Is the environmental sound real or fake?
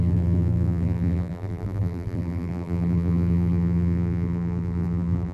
fake